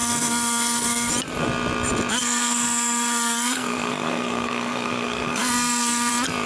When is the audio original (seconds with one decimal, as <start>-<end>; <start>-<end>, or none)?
1.1-2.2; 6.1-6.5